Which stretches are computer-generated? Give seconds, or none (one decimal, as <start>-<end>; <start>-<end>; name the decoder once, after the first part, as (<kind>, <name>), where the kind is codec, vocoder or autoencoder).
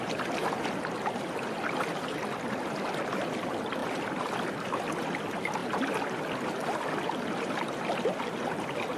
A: none